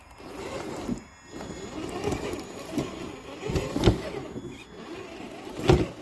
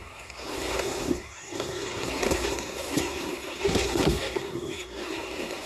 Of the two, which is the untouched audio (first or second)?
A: first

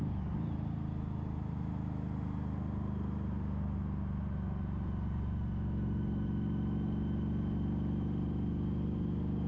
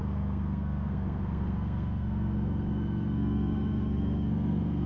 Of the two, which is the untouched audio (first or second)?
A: first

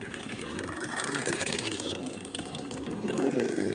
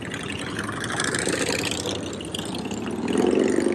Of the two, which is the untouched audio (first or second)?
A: second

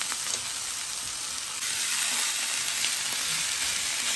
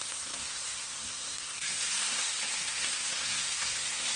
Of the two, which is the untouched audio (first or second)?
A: first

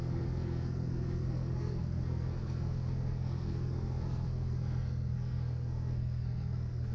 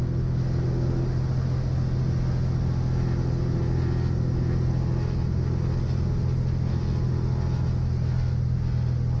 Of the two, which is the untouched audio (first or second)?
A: second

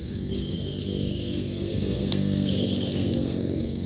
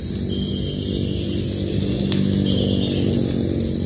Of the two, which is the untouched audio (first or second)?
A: second